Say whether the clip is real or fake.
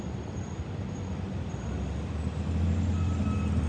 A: real